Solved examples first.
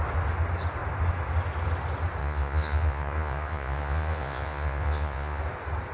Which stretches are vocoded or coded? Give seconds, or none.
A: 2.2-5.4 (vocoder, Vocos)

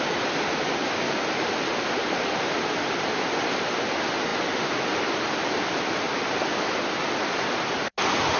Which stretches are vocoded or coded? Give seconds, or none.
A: none

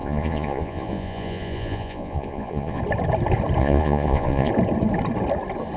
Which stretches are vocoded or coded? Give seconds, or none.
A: 0.0-2.8 (vocoder, Vocos); 3.6-4.5

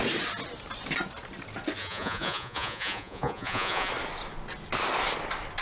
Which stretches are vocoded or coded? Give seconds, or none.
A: 1.8-3.9 (vocoder, Vocos)

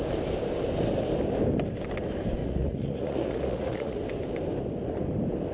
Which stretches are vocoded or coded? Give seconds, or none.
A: 2.4-4.0 (vocoder, Vocos)

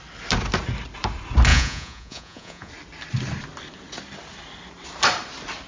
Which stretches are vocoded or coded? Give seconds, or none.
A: 1.5-2.7 (vocoder, Vocos)